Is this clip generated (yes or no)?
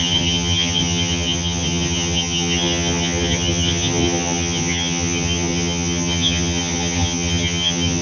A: yes